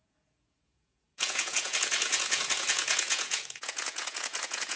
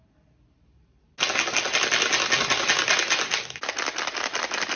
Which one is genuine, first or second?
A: second